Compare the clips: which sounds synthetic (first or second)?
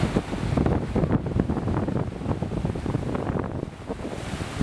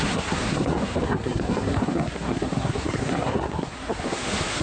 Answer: second